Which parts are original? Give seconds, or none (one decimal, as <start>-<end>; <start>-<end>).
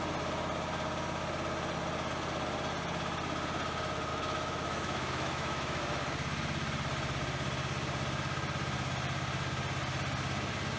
0.0-4.1; 5.8-10.8